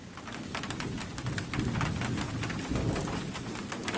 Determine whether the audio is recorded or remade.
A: recorded